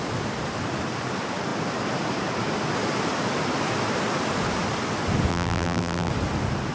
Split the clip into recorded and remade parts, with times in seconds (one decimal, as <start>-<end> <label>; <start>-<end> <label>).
0.0-5.3 recorded; 5.3-6.1 remade; 6.1-6.7 recorded